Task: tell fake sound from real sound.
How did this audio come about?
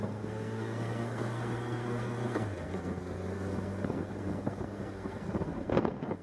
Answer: fake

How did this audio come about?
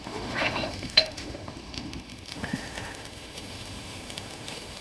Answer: fake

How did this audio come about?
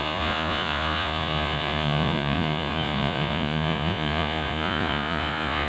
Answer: fake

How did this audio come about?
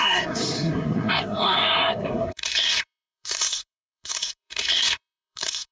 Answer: fake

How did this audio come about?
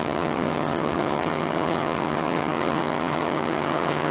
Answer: fake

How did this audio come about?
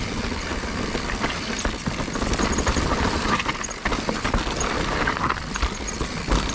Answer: real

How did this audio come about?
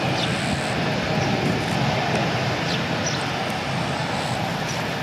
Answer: real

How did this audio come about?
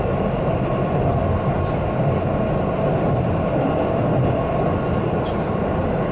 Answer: real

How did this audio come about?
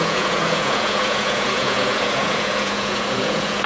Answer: fake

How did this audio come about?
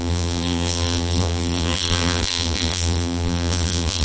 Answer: fake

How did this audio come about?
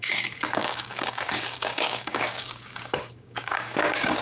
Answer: fake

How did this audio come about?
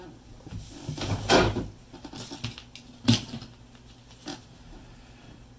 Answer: real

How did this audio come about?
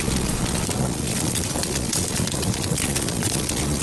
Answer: fake